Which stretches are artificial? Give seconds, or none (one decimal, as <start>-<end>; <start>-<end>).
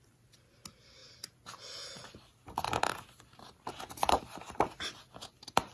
none